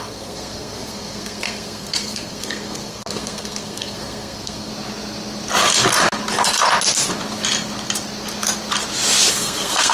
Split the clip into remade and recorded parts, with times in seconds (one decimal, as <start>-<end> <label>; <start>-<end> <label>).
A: 0.0-4.7 remade; 4.7-9.3 recorded; 9.3-9.9 remade